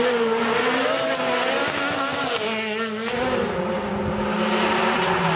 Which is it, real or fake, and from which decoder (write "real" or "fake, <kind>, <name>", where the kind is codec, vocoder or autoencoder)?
real